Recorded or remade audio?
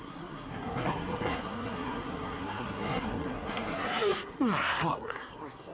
remade